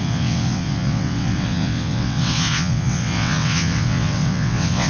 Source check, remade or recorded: remade